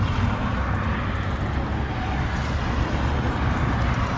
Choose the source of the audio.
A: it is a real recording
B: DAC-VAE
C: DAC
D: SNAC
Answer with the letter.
A